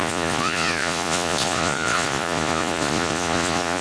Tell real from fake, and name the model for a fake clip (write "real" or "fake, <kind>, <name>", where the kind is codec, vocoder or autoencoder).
fake, vocoder, Vocos